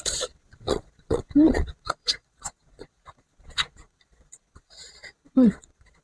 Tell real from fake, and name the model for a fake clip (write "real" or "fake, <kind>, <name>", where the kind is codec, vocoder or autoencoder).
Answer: fake, vocoder, Vocos